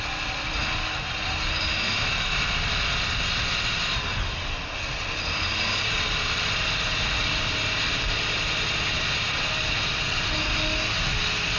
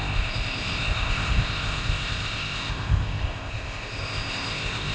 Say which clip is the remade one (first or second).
second